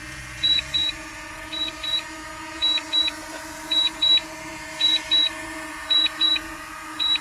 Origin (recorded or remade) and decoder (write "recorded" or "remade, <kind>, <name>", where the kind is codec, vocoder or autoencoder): remade, vocoder, Vocos